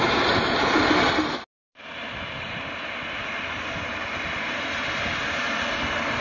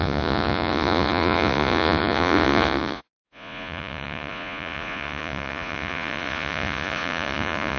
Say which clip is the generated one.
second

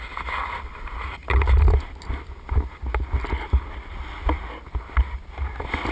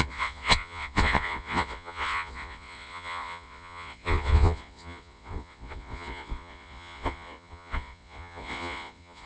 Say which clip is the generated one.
second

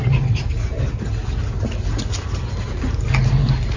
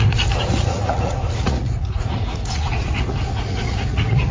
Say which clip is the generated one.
second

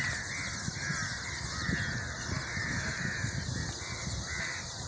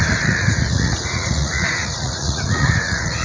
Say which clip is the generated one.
second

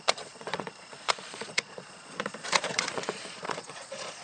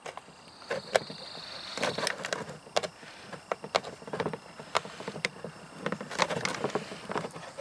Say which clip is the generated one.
first